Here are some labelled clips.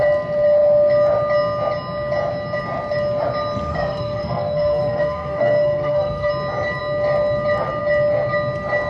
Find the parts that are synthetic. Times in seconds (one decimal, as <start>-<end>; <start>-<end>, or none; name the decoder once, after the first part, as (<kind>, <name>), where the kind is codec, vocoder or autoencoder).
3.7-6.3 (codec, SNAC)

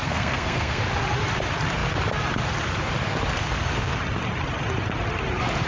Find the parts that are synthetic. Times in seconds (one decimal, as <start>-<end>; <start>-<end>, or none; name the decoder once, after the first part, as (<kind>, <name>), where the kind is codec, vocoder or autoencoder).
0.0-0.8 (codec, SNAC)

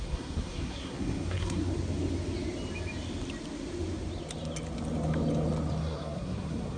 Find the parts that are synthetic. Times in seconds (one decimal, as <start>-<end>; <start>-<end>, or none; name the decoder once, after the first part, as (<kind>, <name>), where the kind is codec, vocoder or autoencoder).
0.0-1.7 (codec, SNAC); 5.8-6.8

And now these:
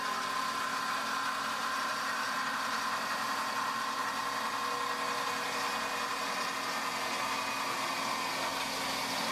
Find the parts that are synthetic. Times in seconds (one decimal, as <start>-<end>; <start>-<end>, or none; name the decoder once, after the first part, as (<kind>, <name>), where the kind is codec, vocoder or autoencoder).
none

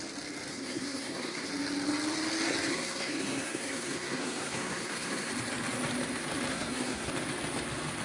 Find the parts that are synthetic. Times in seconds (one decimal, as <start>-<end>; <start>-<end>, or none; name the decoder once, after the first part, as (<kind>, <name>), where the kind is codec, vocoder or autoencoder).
0.5-1.5 (codec, SNAC); 2.7-5.3; 6.5-7.1

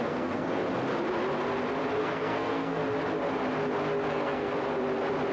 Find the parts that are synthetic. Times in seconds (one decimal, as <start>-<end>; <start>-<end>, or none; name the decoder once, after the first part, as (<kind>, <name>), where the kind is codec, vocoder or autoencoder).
0.0-0.6 (codec, SNAC); 2.0-2.8; 4.1-4.5